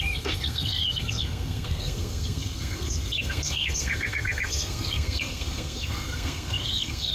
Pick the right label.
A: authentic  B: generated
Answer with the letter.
B